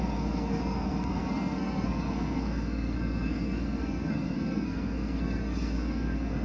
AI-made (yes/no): yes